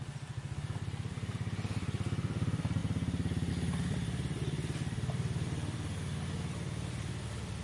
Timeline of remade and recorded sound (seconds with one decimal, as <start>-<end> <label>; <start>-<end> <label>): 0.0-2.8 remade; 2.8-3.5 recorded; 3.5-7.6 remade